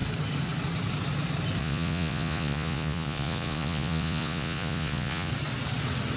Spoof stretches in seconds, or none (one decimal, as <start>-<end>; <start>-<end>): 1.6-5.3